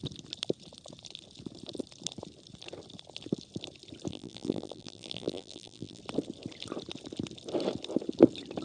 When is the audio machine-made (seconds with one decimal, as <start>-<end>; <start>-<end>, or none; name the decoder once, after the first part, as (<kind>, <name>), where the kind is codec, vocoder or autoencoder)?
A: 4.1-6.0 (vocoder, BigVGAN v2)